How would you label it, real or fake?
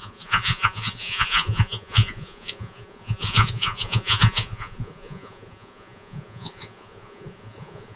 fake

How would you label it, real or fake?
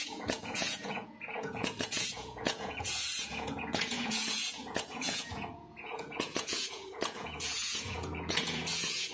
fake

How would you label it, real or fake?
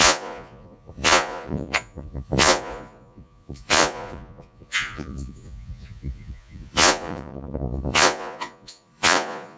fake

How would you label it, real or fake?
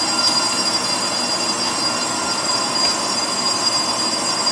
real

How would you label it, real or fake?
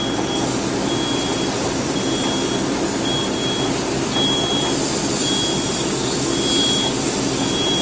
real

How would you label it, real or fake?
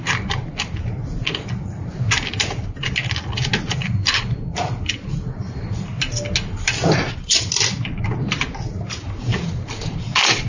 real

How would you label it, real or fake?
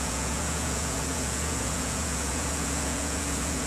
fake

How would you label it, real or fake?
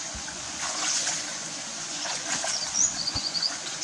fake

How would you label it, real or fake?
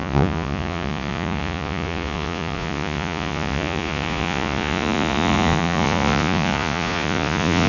fake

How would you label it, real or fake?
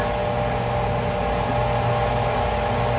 real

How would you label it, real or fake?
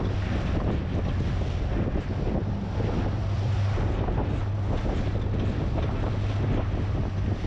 real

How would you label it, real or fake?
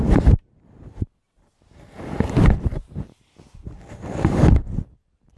real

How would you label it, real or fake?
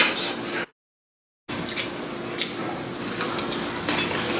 real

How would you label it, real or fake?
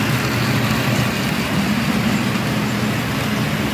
real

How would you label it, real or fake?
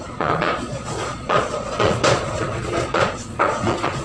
fake